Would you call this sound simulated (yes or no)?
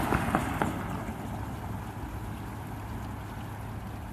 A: no